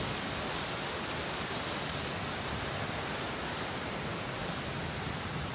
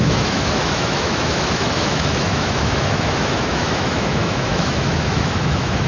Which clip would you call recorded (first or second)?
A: first